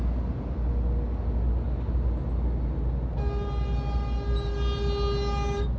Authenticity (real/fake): real